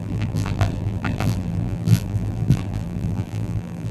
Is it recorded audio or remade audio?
remade